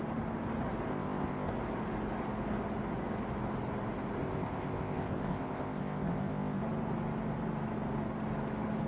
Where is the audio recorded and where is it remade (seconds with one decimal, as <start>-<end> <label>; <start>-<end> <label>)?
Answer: 0.0-0.9 recorded; 0.9-1.5 remade; 1.5-4.2 recorded; 4.2-6.6 remade; 6.6-8.9 recorded